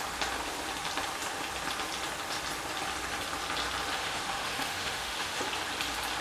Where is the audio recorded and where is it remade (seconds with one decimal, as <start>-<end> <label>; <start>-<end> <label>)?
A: 0.0-4.0 recorded; 4.0-5.4 remade; 5.4-6.2 recorded